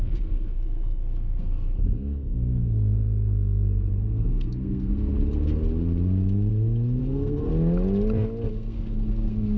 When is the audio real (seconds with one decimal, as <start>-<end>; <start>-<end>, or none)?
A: 5.1-7.0; 7.5-8.5